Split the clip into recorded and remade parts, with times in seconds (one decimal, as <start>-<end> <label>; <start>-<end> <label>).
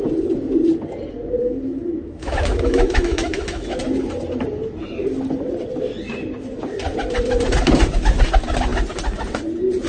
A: 0.0-1.4 recorded; 1.4-3.8 remade; 3.8-9.9 recorded